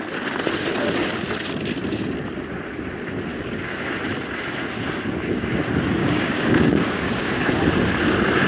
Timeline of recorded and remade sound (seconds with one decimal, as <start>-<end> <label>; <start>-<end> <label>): 0.0-3.3 recorded; 3.3-3.9 remade; 3.9-6.0 recorded; 6.0-7.5 remade; 7.5-8.5 recorded